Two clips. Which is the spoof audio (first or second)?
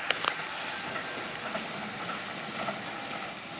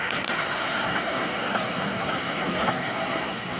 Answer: second